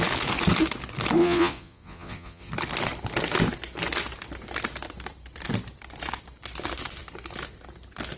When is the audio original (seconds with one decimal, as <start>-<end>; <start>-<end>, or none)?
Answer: 0.0-1.2; 2.5-8.2